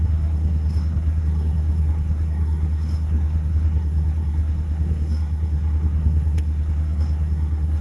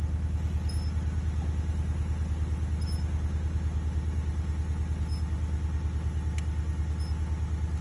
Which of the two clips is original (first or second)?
second